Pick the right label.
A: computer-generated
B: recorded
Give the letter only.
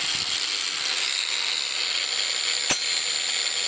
B